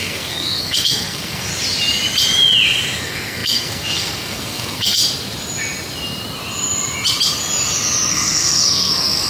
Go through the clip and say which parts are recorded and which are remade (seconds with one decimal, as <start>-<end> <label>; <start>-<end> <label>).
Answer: 0.0-1.5 remade; 1.5-3.0 recorded; 3.0-5.0 remade; 5.0-8.1 recorded; 8.1-9.3 remade

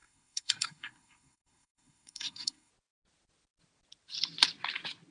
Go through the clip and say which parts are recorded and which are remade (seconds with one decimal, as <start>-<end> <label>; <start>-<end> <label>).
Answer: 0.0-2.7 remade; 2.7-5.1 recorded

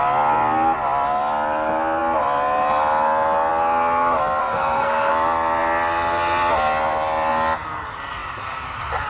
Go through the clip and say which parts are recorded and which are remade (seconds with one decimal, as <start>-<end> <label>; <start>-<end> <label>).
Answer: 0.0-4.4 recorded; 4.4-5.1 remade; 5.1-9.1 recorded

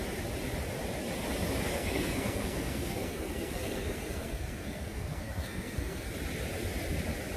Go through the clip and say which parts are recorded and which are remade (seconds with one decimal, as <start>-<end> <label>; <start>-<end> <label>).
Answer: 0.0-1.7 recorded; 1.7-6.1 remade; 6.1-7.4 recorded

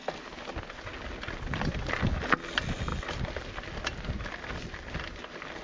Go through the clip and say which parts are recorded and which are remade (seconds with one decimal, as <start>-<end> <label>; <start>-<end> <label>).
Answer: 0.0-5.6 recorded